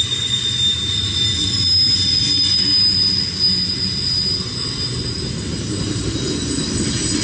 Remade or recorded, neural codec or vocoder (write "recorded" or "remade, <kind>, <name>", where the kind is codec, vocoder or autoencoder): recorded